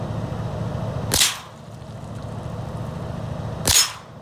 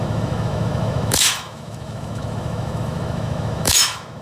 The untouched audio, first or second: first